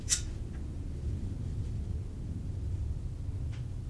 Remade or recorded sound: recorded